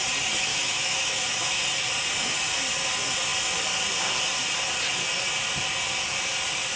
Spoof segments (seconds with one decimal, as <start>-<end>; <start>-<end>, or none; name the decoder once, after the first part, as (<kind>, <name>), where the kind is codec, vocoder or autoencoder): 0.5-1.6 (autoencoder, DAC-VAE)